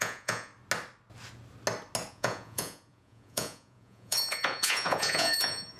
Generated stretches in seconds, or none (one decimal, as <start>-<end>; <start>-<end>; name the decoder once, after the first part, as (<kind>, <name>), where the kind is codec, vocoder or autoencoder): 0.0-0.5 (vocoder, Vocos); 2.1-5.8